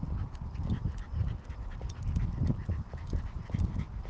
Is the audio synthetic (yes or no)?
no